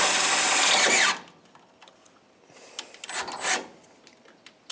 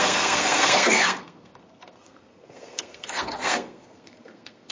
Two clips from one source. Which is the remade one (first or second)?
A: second